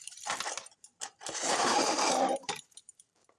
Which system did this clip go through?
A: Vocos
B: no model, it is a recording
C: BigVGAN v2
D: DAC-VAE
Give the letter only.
C